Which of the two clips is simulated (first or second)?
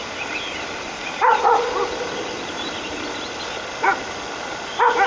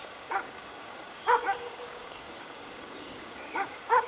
second